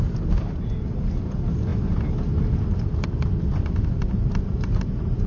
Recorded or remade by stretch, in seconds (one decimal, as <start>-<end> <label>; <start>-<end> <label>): 0.0-5.3 recorded